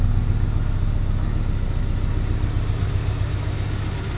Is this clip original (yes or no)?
yes